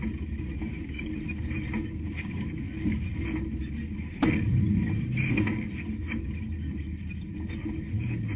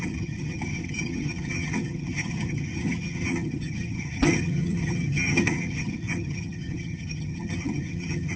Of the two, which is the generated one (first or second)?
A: second